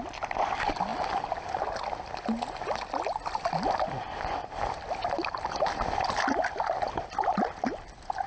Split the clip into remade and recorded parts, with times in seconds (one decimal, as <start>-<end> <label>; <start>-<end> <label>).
0.0-8.3 recorded